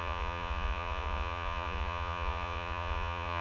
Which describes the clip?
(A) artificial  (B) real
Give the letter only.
A